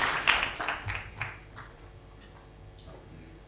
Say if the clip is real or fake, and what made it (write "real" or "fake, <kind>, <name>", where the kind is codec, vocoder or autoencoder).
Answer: real